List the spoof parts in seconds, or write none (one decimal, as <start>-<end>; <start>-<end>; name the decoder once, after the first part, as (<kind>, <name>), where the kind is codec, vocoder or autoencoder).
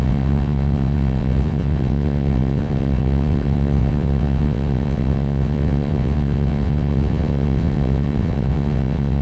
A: 0.0-9.2 (vocoder, WaveNeXt)